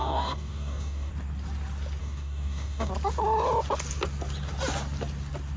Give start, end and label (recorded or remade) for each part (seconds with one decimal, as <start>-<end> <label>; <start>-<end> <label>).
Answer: 0.0-1.1 remade; 1.1-2.0 recorded; 2.0-2.9 remade; 2.9-5.6 recorded